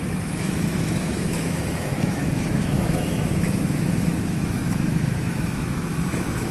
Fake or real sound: fake